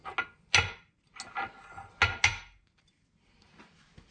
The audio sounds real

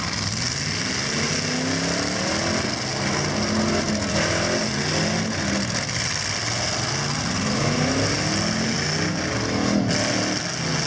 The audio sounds real